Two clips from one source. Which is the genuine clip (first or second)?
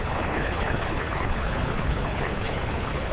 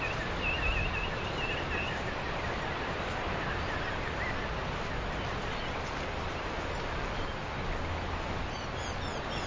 second